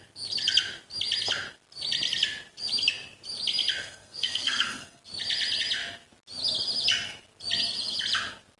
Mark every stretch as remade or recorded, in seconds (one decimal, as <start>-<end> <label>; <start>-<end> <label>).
0.0-3.8 recorded; 3.8-5.0 remade; 5.0-8.6 recorded